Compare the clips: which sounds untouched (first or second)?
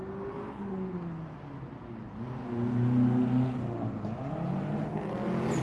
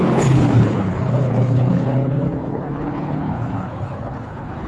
first